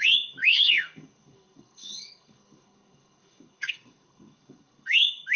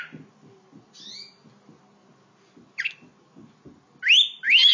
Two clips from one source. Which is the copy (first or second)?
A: first